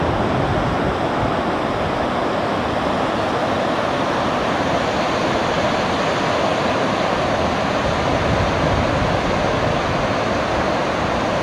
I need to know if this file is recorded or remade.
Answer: recorded